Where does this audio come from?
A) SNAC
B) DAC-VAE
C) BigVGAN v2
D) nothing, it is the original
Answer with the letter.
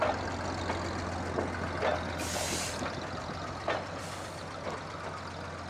D